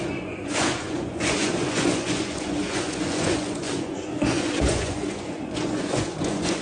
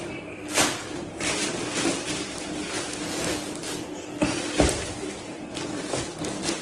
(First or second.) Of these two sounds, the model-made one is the first